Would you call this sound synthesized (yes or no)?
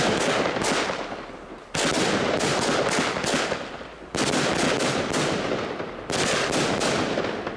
no